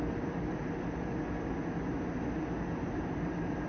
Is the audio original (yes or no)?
yes